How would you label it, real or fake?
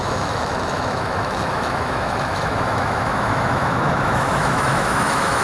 fake